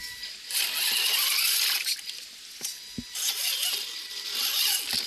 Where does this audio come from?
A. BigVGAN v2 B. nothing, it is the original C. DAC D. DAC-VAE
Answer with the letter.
B